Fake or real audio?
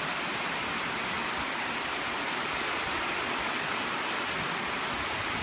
real